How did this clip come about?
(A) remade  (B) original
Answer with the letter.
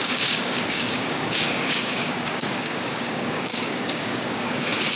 A